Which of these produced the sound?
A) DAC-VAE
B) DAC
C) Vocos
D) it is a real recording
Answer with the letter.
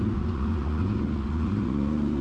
C